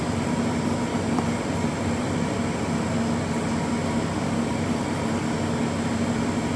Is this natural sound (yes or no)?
yes